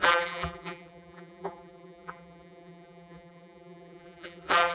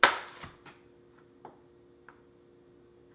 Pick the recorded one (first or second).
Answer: second